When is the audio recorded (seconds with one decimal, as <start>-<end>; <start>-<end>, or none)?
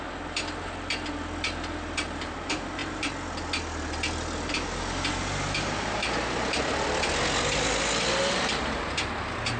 0.0-9.6